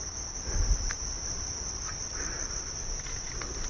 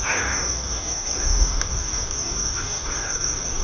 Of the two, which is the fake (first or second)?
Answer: second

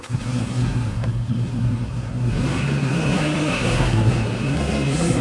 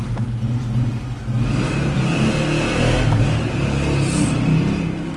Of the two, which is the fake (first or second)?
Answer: first